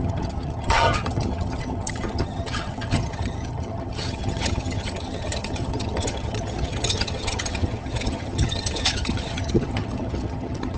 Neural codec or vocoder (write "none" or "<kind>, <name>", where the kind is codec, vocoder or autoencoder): vocoder, HiFi-GAN